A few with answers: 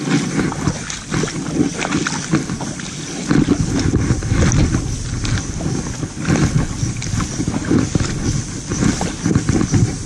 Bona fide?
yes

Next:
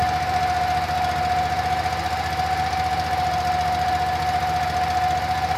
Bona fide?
yes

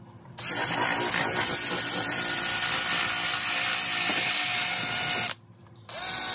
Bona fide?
yes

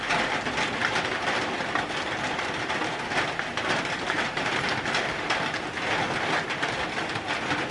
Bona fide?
yes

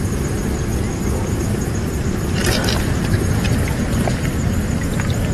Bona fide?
yes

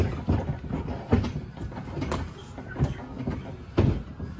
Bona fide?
yes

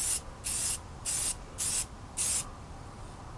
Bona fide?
yes